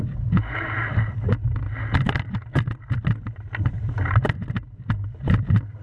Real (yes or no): yes